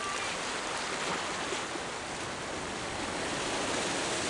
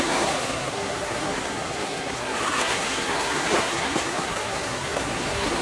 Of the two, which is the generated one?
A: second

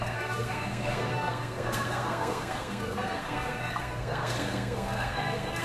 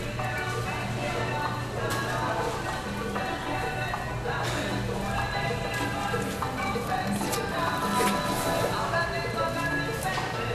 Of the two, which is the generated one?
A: first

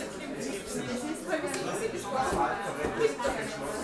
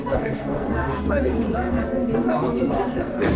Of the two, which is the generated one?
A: second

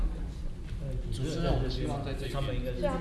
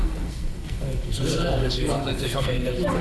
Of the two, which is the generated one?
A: second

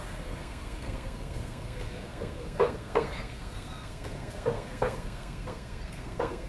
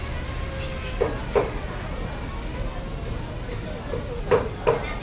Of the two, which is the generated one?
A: first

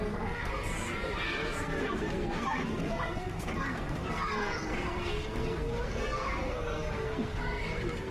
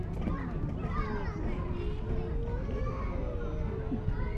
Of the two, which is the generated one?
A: first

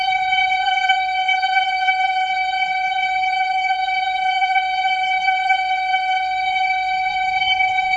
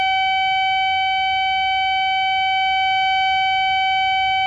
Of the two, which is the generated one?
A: first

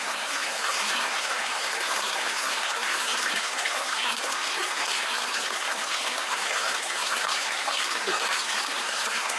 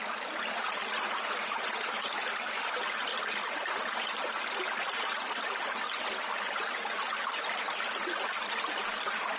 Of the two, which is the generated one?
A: first